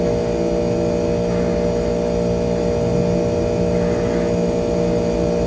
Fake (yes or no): no